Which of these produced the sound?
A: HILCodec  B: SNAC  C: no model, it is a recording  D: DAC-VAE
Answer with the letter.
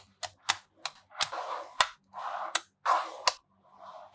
C